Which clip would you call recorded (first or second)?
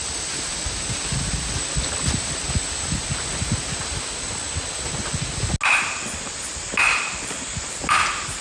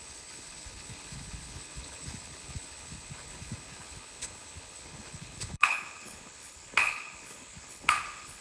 first